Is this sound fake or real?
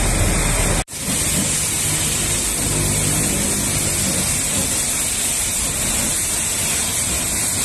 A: real